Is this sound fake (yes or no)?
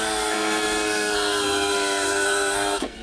yes